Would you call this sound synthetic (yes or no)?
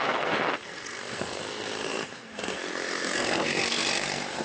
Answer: yes